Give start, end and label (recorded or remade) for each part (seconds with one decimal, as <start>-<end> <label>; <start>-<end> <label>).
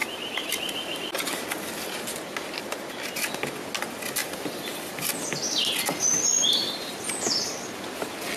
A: 0.0-4.2 recorded; 4.2-5.1 remade; 5.1-6.3 recorded; 6.3-7.4 remade; 7.4-8.4 recorded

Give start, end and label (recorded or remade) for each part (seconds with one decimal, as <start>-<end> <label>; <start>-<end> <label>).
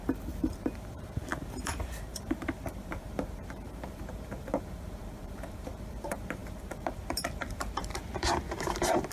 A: 0.0-9.1 remade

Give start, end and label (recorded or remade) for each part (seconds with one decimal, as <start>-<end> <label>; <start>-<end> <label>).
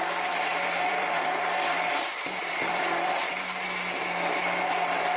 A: 0.0-0.5 recorded; 0.5-3.6 remade; 3.6-5.2 recorded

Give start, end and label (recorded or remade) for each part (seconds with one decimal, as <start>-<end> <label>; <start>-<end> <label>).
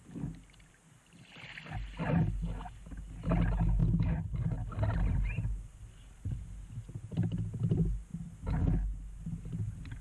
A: 0.0-10.0 recorded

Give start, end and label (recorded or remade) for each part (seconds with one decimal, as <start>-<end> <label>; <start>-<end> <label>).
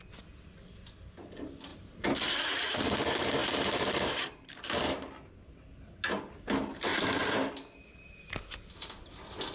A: 0.0-1.7 recorded; 1.7-2.4 remade; 2.4-3.4 recorded; 3.4-5.1 remade; 5.1-6.9 recorded; 6.9-7.5 remade; 7.5-9.5 recorded